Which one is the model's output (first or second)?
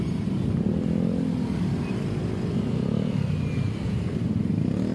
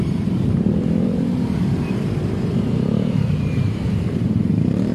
second